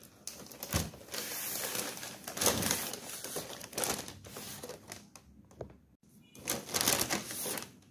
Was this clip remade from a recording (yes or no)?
no